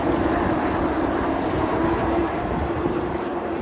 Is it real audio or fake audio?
fake